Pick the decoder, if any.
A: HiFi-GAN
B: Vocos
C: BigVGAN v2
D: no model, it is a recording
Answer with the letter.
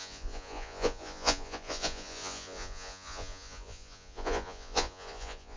B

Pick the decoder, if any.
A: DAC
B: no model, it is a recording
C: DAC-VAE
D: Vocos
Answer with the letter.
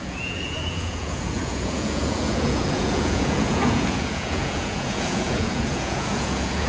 D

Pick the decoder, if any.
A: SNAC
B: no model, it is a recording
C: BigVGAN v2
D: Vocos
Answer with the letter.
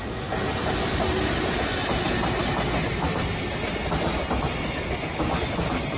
B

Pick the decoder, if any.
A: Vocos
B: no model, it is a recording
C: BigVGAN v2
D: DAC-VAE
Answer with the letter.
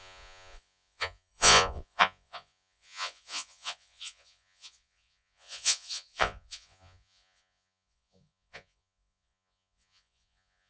A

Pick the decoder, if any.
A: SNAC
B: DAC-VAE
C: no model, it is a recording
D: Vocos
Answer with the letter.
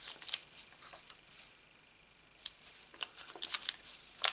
C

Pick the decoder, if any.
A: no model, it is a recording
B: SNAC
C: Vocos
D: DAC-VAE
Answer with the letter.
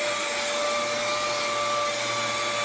A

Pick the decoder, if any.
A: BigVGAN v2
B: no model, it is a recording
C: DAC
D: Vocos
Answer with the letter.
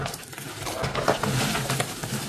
B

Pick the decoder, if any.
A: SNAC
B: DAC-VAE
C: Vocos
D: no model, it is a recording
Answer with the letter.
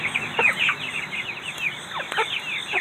D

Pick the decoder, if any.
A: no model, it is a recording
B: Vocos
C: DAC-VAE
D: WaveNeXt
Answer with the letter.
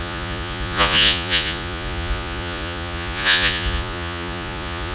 B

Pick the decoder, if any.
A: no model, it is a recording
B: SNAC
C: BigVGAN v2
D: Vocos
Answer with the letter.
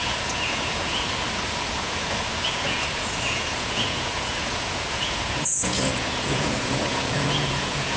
D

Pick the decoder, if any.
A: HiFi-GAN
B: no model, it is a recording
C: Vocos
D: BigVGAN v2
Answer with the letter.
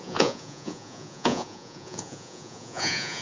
C